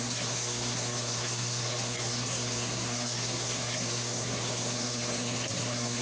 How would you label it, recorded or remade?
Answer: remade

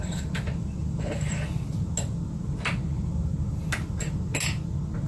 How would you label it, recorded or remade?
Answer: recorded